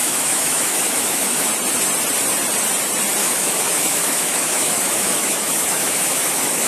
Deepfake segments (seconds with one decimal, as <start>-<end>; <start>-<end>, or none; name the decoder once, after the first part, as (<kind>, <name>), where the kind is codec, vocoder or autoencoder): 0.0-1.5 (autoencoder, DAC-VAE); 3.2-6.7